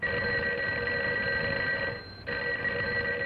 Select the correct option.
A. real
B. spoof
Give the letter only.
A